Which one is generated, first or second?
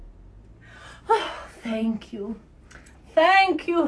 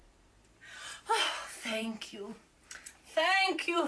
second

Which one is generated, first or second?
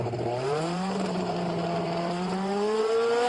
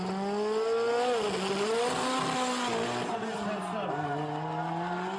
first